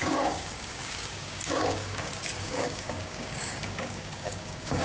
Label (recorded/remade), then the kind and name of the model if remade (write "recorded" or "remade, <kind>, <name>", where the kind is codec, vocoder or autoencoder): remade, codec, DAC